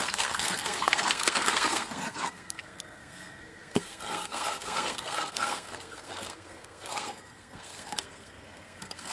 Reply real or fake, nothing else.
fake